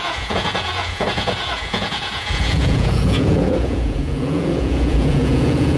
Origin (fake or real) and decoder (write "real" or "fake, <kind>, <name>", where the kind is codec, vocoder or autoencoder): fake, vocoder, Vocos